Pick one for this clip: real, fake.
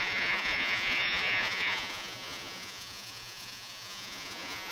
fake